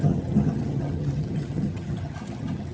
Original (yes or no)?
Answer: no